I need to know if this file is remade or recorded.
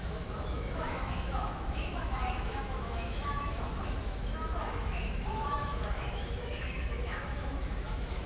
remade